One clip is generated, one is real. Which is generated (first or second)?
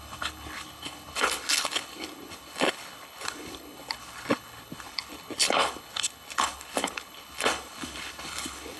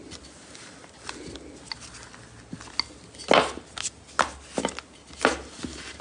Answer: first